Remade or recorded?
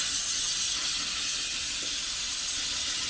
recorded